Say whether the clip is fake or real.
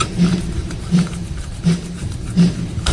fake